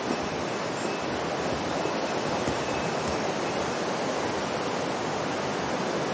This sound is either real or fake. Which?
real